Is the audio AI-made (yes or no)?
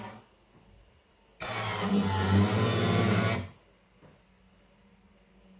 no